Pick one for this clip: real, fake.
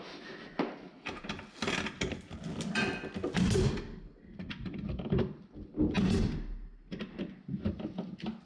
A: real